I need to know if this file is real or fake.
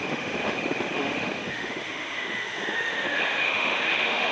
fake